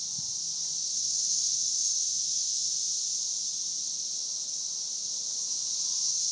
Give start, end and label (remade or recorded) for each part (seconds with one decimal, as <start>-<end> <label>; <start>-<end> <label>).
0.0-0.8 recorded; 0.8-2.7 remade; 2.7-6.3 recorded

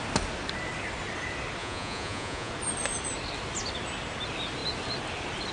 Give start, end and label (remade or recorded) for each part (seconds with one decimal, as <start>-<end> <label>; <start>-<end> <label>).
0.0-1.6 recorded; 1.6-2.5 remade; 2.5-5.5 recorded

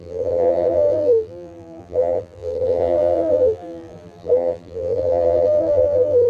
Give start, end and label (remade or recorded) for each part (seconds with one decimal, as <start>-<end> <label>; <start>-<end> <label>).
0.0-6.3 remade

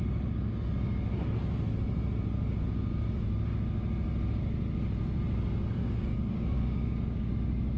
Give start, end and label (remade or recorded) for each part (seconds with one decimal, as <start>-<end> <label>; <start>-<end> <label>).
0.0-5.8 recorded; 5.8-7.3 remade; 7.3-7.8 recorded

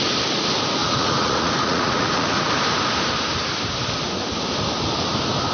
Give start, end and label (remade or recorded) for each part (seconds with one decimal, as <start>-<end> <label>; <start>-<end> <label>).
0.0-0.8 recorded; 0.8-2.5 remade; 2.5-5.5 recorded

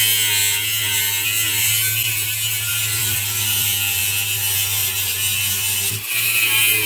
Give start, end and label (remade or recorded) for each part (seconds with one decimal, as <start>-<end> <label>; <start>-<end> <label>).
0.0-2.7 recorded; 2.7-4.0 remade; 4.0-6.9 recorded

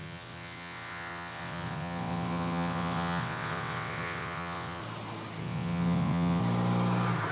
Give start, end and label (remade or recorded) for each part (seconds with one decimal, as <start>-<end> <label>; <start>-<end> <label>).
0.0-4.8 remade; 4.8-5.4 recorded; 5.4-6.4 remade; 6.4-7.3 recorded

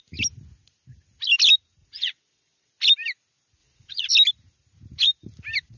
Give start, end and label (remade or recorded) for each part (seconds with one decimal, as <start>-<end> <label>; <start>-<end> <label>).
0.0-1.8 recorded; 1.8-2.7 remade; 2.7-3.6 recorded; 3.6-4.1 remade; 4.1-5.8 recorded